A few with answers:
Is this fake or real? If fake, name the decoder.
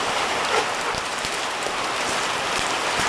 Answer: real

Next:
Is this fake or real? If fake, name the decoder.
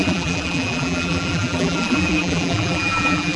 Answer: fake, vocoder, BigVGAN v2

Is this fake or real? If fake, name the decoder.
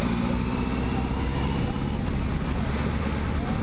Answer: real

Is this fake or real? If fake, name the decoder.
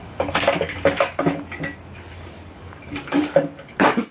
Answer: fake, codec, DAC